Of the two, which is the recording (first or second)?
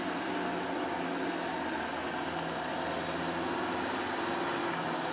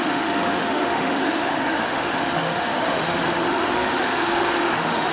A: first